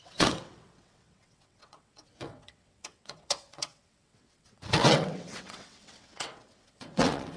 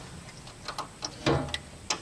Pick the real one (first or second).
second